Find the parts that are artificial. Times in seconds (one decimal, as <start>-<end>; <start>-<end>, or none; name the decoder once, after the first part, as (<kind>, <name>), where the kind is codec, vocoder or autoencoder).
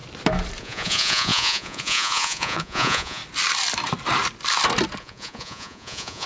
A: 0.6-3.2 (vocoder, Vocos); 5.0-6.3